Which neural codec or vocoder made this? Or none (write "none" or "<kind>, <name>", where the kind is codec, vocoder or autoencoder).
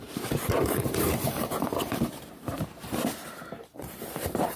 vocoder, BigVGAN v2